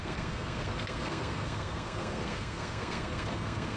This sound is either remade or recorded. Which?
remade